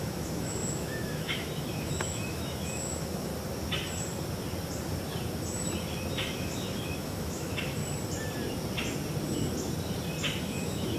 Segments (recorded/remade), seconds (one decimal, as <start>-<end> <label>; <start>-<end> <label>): 0.0-3.3 remade; 3.3-6.1 recorded; 6.1-7.8 remade; 7.8-10.4 recorded; 10.4-11.0 remade